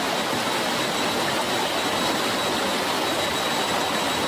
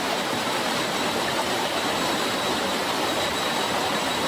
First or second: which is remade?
second